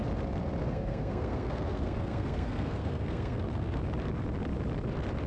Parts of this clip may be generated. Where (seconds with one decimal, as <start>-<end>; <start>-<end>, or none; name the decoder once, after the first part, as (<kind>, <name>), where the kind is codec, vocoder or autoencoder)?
0.6-3.8 (codec, SNAC)